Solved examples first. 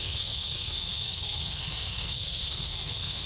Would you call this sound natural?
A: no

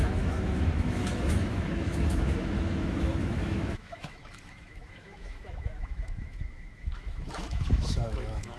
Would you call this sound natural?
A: no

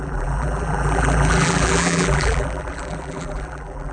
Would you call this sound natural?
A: no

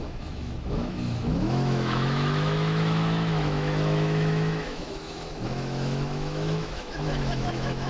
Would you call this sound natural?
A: no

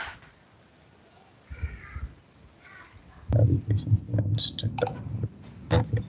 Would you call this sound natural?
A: yes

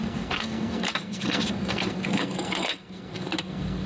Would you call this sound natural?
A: no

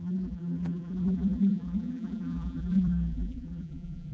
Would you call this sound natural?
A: no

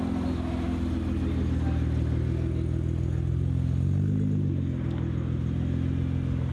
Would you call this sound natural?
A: yes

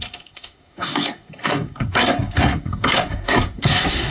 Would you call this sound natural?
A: no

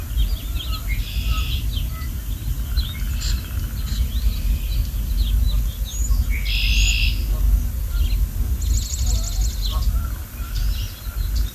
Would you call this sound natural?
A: yes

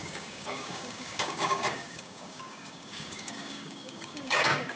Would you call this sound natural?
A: no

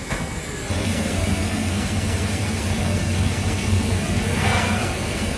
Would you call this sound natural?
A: no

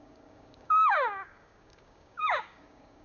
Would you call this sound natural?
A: no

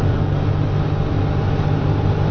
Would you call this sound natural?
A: no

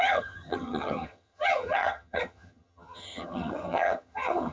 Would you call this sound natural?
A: no